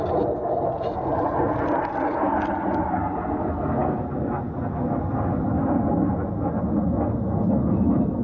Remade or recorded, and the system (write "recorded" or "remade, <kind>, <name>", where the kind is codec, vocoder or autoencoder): recorded